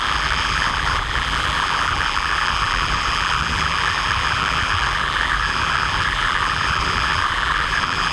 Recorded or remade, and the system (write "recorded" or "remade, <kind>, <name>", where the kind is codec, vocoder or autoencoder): remade, vocoder, BigVGAN v2